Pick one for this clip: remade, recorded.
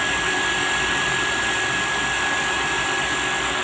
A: recorded